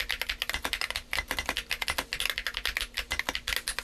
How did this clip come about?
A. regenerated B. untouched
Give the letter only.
B